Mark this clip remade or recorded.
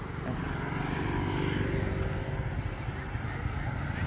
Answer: recorded